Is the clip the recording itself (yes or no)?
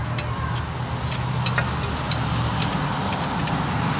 yes